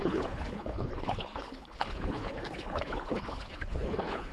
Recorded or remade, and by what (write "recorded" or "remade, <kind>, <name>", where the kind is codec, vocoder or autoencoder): remade, codec, HILCodec